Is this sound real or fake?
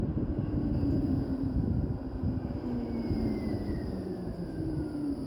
fake